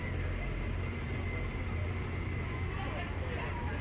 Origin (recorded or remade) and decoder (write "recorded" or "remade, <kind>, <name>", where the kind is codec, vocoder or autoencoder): recorded